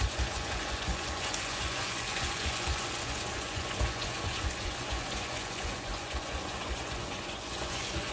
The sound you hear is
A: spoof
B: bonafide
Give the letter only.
A